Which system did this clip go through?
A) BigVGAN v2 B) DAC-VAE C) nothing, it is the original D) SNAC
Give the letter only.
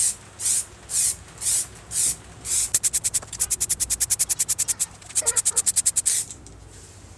A